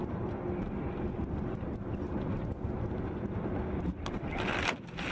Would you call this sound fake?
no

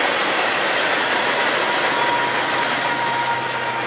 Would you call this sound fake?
no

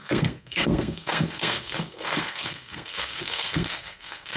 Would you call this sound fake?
yes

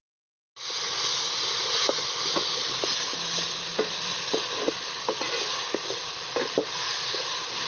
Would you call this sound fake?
no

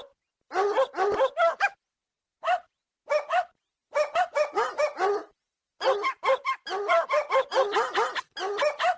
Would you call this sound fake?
no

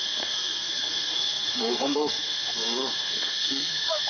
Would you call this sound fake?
yes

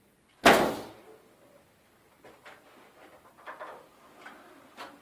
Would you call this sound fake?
no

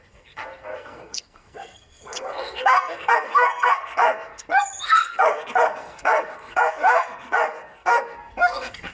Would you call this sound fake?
yes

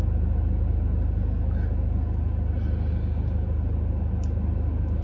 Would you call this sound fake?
no